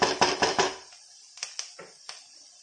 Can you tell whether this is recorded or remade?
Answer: recorded